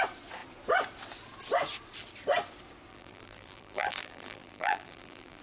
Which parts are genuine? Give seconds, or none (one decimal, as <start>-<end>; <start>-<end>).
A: 0.0-2.9